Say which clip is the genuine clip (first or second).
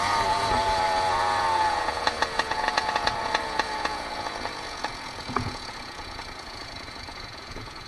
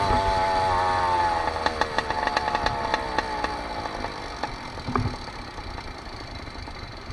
second